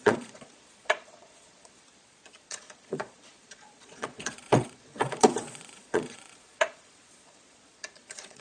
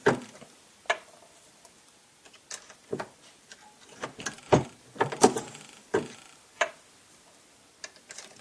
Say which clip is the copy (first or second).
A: first